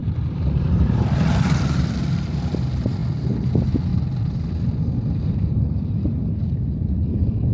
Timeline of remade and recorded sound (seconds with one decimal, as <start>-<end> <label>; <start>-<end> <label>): 0.0-2.0 remade; 2.0-3.9 recorded; 3.9-4.5 remade; 4.5-7.5 recorded